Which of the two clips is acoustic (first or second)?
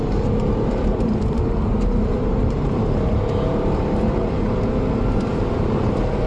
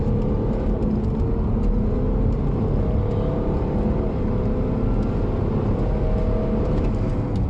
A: second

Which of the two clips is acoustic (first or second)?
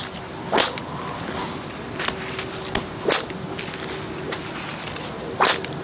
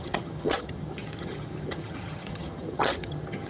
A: first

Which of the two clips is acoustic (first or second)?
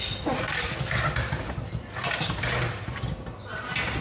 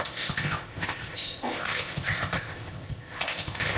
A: first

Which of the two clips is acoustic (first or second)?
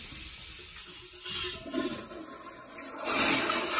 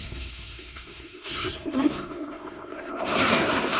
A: first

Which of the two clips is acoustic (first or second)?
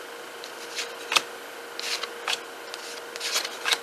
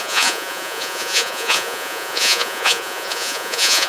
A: first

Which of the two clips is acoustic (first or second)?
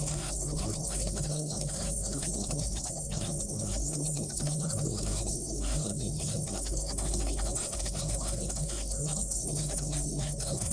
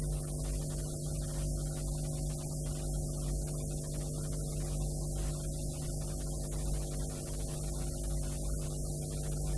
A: second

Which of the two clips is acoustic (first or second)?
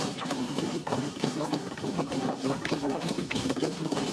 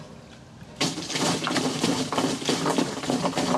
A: second